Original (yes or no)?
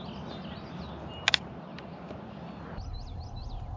yes